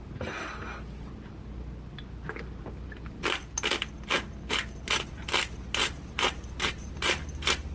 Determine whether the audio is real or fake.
real